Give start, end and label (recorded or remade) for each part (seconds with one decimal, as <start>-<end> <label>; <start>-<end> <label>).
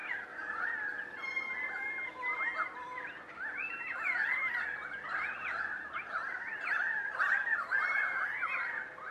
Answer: 0.0-6.2 recorded; 6.2-7.0 remade; 7.0-9.1 recorded